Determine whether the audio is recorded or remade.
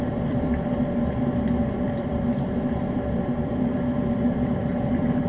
remade